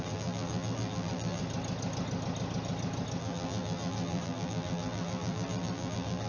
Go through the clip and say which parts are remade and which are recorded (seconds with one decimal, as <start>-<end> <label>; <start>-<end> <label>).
0.0-1.4 remade; 1.4-3.2 recorded; 3.2-6.3 remade